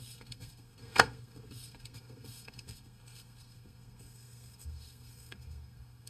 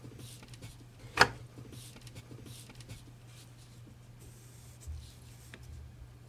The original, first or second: second